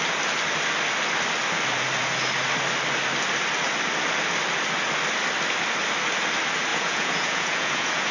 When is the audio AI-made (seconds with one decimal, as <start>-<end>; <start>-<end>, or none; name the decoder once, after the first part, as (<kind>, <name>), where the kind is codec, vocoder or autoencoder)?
6.7-8.1 (vocoder, Vocos)